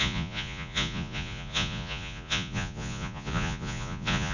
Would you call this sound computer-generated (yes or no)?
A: yes